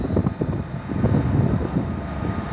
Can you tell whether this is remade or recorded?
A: recorded